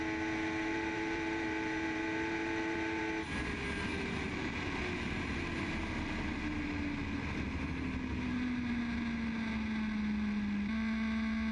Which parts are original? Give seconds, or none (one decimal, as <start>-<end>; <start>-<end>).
0.0-0.7; 3.0-8.3; 8.8-11.5